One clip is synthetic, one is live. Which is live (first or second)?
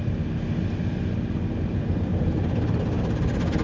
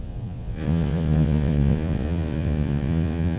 first